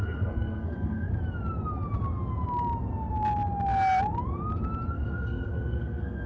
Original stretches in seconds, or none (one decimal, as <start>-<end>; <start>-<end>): 1.1-4.9